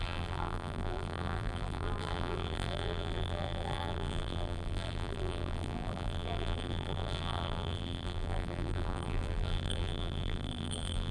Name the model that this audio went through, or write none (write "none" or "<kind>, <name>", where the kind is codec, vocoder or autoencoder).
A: vocoder, BigVGAN v2